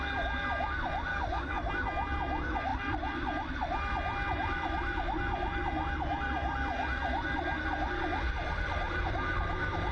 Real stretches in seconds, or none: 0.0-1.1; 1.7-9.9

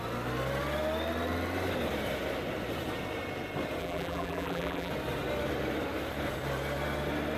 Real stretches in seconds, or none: 0.0-3.8; 4.9-7.4

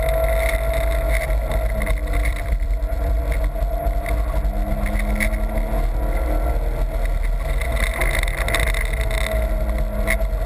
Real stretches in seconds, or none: 0.0-2.0; 3.2-10.5

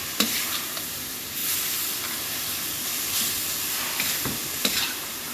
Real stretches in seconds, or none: 1.4-4.6